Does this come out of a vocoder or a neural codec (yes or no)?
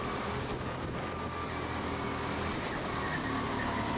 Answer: no